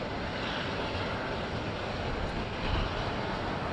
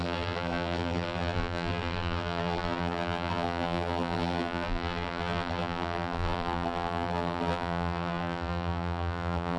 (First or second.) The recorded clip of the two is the first